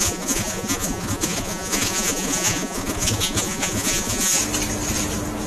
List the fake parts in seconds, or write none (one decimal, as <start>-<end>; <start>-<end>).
0.0-4.4

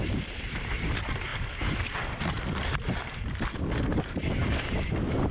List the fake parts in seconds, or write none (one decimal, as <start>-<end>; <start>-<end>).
none

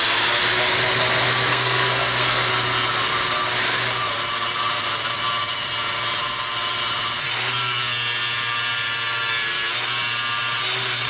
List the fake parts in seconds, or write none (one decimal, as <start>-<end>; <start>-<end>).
1.5-2.5